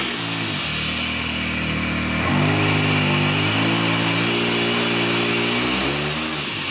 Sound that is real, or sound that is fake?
real